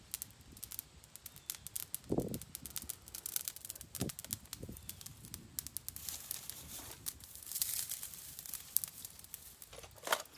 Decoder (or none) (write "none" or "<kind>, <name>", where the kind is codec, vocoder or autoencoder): none